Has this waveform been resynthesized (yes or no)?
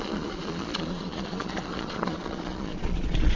yes